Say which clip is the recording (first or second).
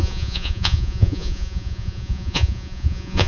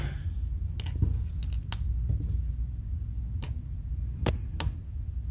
second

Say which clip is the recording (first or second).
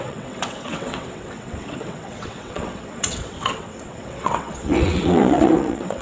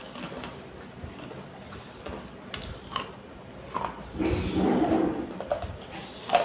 second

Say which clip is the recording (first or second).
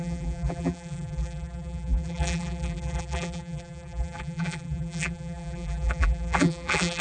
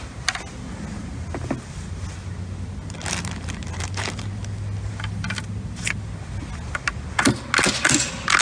second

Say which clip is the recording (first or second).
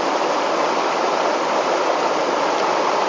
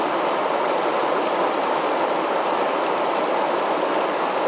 second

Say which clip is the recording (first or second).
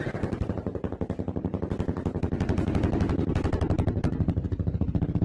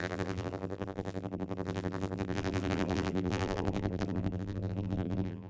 first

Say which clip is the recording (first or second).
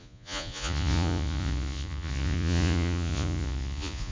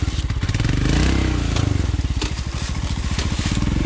second